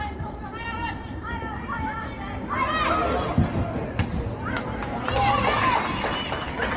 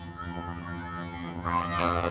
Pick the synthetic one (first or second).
second